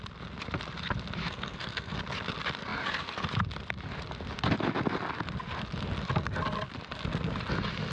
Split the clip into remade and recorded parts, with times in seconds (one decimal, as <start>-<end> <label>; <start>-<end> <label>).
0.0-1.2 recorded; 1.2-2.0 remade; 2.0-7.9 recorded